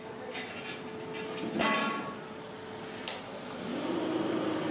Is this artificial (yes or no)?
no